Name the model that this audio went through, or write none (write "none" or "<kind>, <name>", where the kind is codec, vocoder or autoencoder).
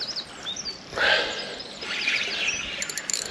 none